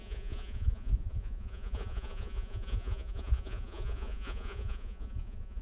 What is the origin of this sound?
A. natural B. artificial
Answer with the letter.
B